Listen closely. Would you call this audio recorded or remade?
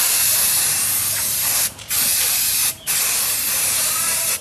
remade